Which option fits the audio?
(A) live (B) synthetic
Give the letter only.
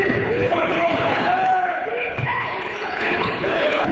B